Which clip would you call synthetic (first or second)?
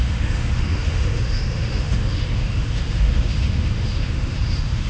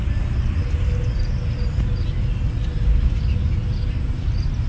first